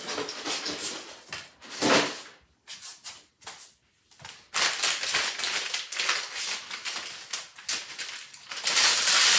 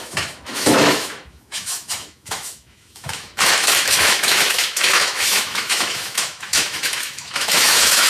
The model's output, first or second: second